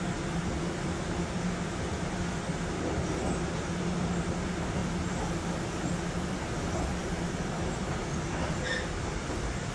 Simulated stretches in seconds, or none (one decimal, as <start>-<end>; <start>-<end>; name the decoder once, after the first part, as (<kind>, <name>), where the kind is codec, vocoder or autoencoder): none